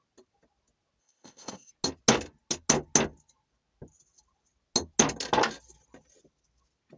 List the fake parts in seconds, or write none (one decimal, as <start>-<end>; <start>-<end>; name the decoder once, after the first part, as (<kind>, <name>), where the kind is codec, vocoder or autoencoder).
1.0-1.7 (codec, ZipCodec)

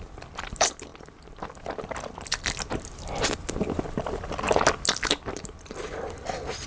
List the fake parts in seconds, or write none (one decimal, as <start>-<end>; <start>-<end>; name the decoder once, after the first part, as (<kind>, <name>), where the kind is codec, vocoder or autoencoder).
none

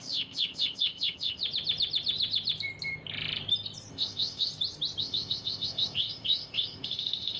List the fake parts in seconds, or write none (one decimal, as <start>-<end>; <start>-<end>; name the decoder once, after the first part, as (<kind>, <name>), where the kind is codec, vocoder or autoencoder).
0.0-1.4 (codec, ZipCodec); 3.9-4.5; 5.0-7.4

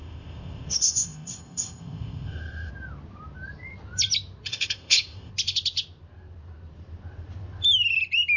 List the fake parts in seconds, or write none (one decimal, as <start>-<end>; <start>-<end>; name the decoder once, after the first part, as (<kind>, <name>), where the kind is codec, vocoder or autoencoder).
0.0-2.7 (codec, ZipCodec); 4.5-5.3

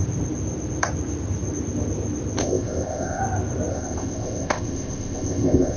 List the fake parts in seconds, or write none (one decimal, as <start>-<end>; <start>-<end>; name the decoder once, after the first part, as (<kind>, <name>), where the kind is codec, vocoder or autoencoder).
2.4-3.2 (codec, ZipCodec); 3.7-5.8